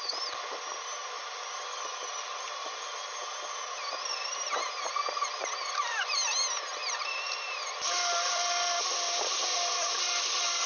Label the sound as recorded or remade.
recorded